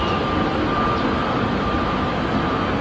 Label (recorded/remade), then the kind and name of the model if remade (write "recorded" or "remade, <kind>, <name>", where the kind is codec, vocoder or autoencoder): recorded